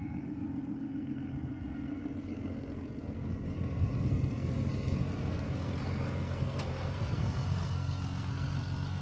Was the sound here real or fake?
fake